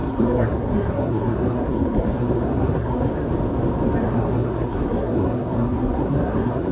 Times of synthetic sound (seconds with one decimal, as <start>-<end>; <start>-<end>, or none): 0.0-3.1; 4.0-6.7